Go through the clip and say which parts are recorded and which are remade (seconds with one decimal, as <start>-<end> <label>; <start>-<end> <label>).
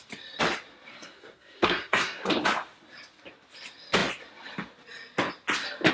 0.0-0.9 recorded; 0.9-2.3 remade; 2.3-5.9 recorded